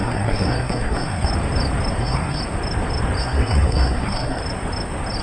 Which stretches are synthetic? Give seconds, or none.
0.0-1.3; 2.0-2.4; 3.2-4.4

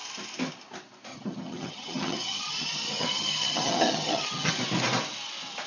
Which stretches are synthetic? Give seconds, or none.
1.1-4.5

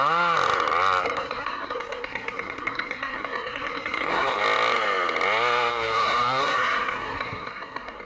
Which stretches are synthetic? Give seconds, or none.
1.0-4.4; 5.7-8.0

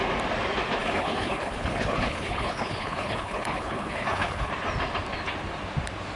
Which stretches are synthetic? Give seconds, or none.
0.8-4.5

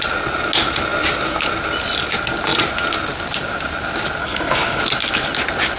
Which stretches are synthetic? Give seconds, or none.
4.2-4.8

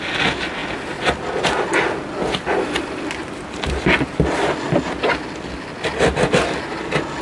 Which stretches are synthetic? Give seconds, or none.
none

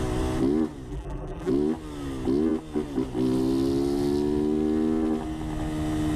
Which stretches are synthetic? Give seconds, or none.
0.9-1.5